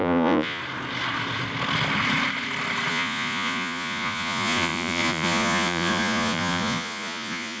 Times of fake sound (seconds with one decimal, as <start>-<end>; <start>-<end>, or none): 0.0-0.6; 2.9-7.6